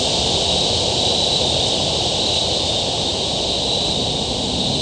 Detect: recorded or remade recorded